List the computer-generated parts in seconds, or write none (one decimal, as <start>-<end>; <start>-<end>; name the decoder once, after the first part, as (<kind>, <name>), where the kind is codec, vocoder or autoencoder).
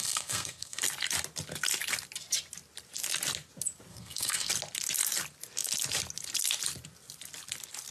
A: 0.0-0.8 (codec, SNAC); 3.9-4.5